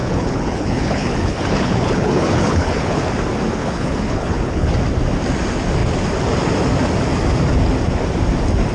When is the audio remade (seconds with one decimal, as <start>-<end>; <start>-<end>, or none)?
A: 0.0-3.0; 3.6-4.7